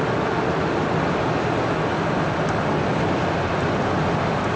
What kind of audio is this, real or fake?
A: real